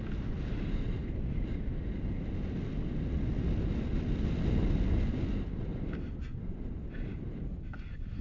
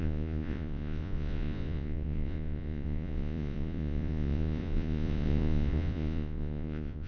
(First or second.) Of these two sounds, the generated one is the second